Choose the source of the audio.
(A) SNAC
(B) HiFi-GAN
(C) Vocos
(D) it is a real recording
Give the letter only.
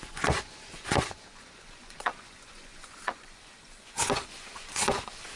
C